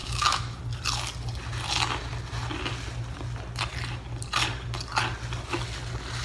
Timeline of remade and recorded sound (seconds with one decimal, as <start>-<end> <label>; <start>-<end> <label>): 0.0-0.6 remade; 0.6-6.2 recorded